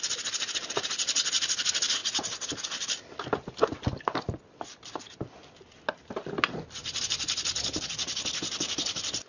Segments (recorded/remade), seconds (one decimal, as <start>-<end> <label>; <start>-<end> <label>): 0.0-9.3 recorded